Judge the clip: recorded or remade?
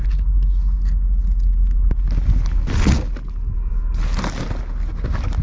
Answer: recorded